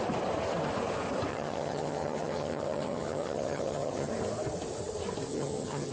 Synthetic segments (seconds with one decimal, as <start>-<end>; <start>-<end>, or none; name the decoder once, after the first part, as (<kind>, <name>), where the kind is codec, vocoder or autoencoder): 1.3-4.1 (vocoder, HiFi-GAN); 5.3-5.9